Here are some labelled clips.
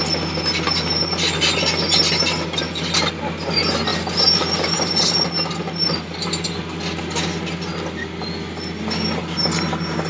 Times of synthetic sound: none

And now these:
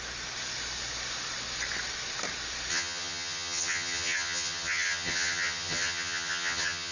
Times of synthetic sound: 2.7-6.9 (vocoder, HiFi-GAN)

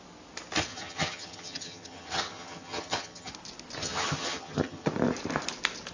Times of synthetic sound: 0.7-3.3 (vocoder, HiFi-GAN); 3.8-4.9

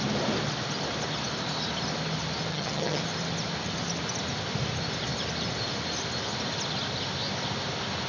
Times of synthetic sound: 2.5-3.0 (vocoder, HiFi-GAN)

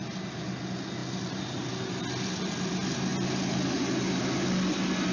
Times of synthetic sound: none

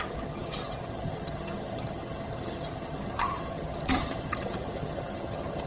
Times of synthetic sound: 0.0-5.7 (vocoder, HiFi-GAN)